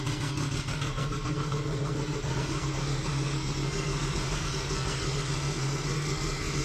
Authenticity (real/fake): fake